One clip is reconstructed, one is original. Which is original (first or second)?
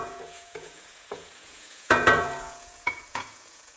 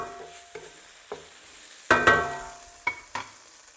second